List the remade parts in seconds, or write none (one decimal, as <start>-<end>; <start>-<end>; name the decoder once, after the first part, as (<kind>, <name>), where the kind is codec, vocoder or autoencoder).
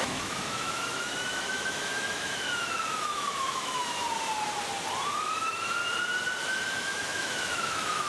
0.0-4.0 (autoencoder, DAC-VAE); 5.2-5.8; 6.4-8.1